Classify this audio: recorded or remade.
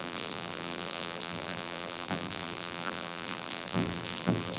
remade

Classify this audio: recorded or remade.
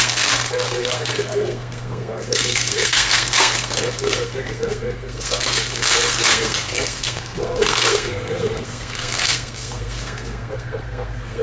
remade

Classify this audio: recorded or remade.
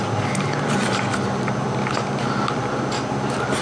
recorded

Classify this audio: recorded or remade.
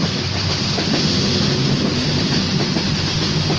recorded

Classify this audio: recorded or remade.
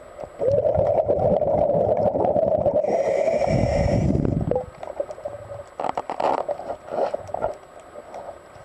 recorded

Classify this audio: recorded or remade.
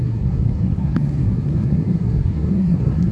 remade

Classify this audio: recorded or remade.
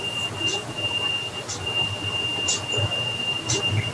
recorded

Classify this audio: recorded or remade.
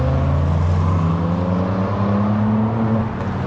recorded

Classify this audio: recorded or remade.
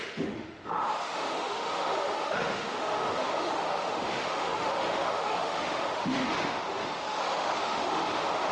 remade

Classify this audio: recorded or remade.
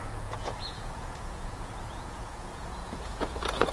remade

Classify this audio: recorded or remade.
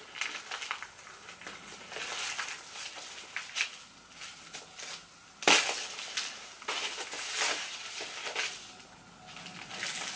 recorded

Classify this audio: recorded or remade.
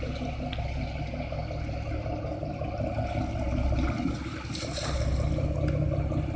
recorded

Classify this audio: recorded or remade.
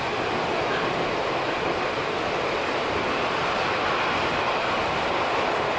recorded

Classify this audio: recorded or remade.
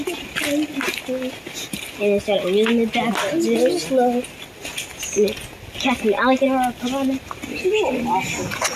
recorded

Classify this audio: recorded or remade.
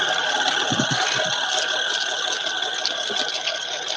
recorded